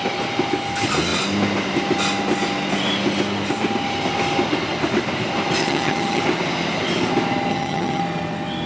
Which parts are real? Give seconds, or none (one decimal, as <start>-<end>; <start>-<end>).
0.0-5.6; 6.2-7.5; 8.0-8.7